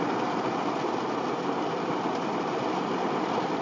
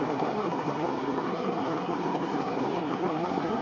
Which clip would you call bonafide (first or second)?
first